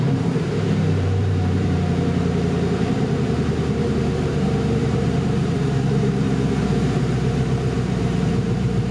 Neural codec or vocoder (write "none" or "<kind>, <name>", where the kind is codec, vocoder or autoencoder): vocoder, BigVGAN v2